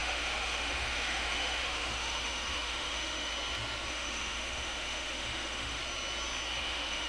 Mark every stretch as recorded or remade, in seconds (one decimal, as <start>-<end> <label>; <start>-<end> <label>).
0.0-3.3 remade; 3.3-3.9 recorded; 3.9-5.8 remade; 5.8-6.6 recorded; 6.6-7.1 remade